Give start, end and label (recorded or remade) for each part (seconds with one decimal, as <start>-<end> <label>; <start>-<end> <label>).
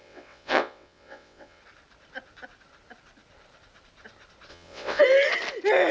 0.0-1.6 remade; 1.6-4.5 recorded; 4.5-5.0 remade; 5.0-5.9 recorded